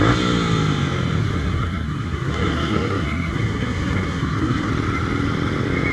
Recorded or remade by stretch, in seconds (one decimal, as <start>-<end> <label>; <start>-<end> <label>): 0.0-1.2 recorded; 1.2-4.7 remade; 4.7-5.9 recorded